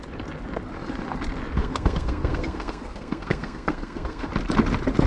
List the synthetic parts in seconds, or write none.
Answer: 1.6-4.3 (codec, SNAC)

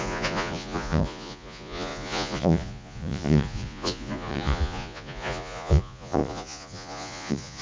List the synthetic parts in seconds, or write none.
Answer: 0.0-7.6 (vocoder, Vocos)